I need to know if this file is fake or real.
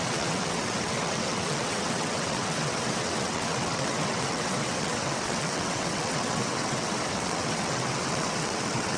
fake